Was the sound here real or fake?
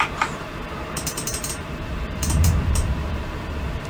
fake